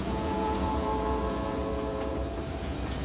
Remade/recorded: remade